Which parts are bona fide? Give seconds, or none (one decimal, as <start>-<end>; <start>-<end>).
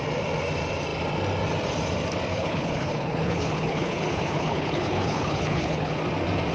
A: 0.0-2.3; 6.0-6.5